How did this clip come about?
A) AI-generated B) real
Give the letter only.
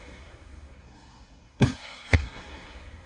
A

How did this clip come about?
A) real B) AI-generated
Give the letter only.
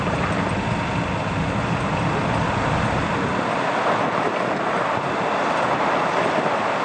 A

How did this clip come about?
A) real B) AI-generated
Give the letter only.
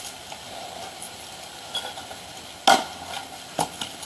A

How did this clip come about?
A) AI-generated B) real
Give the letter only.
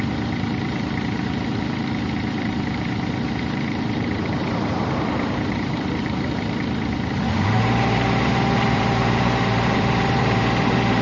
A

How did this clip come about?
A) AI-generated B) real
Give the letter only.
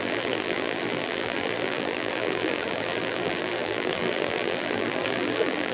A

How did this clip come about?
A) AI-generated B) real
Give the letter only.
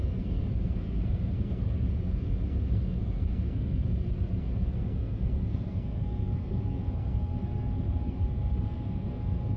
A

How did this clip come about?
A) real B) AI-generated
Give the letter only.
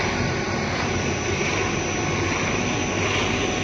A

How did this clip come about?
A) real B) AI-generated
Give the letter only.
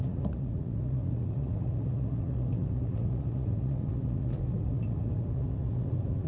B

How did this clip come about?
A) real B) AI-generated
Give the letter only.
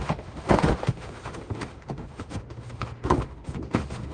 B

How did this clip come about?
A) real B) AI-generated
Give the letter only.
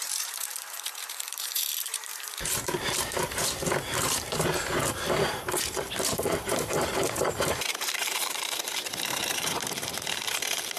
B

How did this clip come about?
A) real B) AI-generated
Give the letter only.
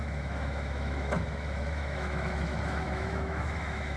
B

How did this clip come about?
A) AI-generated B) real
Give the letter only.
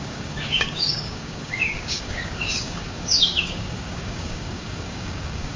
A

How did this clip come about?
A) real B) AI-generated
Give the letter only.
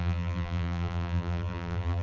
B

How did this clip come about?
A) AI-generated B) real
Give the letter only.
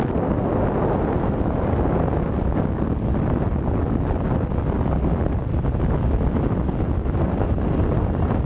B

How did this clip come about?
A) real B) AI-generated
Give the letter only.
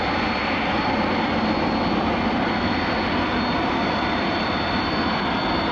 A